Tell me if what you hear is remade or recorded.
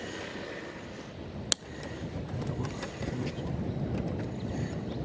recorded